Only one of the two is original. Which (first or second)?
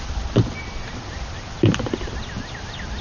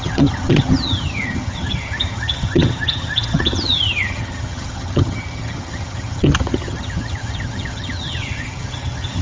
first